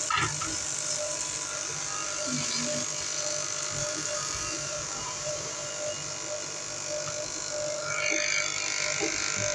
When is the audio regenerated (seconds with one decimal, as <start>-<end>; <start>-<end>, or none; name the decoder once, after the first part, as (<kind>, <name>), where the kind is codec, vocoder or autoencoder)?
3.8-5.7 (vocoder, BigVGAN v2)